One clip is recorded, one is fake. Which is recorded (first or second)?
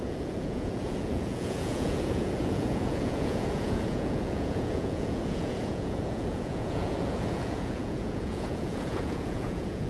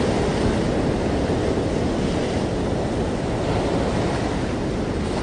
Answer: second